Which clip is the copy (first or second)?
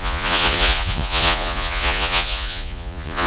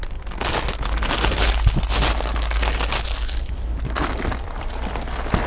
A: first